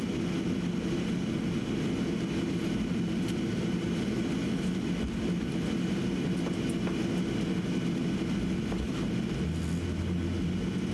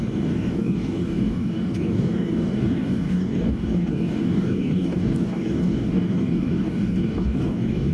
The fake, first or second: second